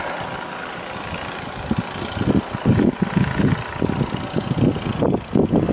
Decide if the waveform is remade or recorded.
recorded